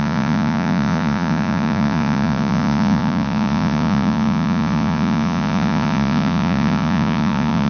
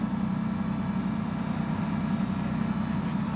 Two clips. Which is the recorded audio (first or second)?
second